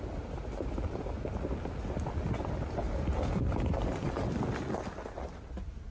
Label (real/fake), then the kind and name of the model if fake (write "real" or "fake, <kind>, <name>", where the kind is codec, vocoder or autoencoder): real